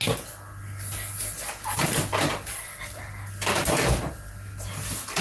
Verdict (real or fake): real